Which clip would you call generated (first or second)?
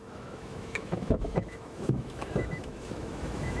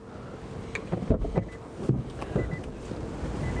first